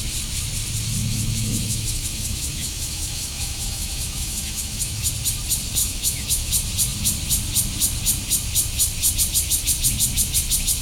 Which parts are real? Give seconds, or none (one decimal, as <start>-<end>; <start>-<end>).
0.0-1.0; 5.1-5.8; 6.5-10.8

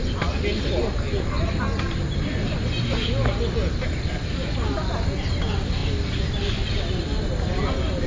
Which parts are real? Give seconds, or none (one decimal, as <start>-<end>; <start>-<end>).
0.0-8.1